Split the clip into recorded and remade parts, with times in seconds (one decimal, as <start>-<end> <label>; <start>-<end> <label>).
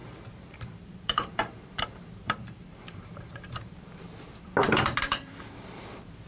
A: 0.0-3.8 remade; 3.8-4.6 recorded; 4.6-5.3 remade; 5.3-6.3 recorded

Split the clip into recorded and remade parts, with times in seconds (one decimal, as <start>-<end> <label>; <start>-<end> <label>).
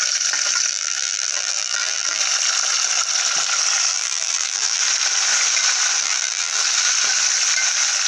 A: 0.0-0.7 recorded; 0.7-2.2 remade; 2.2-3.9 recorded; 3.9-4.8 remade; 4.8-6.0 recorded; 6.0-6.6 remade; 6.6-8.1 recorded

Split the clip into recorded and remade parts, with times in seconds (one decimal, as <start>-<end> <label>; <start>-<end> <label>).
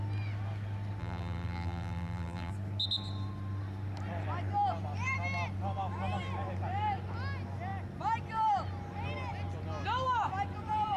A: 0.0-1.0 recorded; 1.0-2.5 remade; 2.5-11.0 recorded